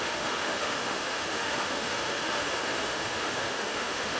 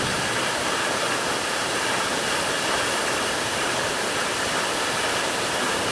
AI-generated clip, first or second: first